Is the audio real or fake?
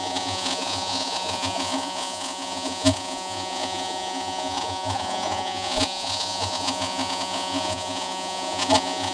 fake